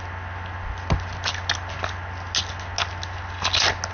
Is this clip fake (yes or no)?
no